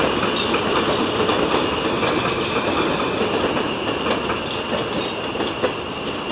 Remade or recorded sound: recorded